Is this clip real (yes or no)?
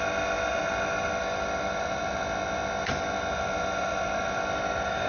yes